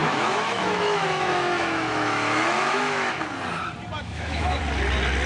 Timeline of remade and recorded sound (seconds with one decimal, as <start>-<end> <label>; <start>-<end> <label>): 0.0-3.2 remade; 3.2-4.0 recorded; 4.0-4.6 remade; 4.6-5.3 recorded